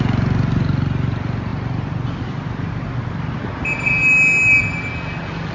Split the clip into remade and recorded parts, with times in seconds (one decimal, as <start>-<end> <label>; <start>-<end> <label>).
0.0-5.5 recorded